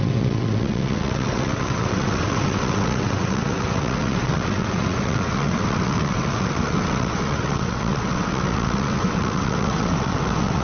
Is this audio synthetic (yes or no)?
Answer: yes